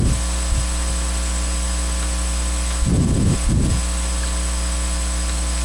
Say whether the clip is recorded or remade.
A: recorded